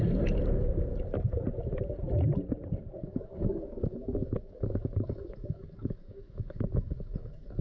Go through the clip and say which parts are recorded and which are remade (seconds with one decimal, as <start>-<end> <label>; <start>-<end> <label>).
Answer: 0.0-3.0 recorded; 3.0-7.6 remade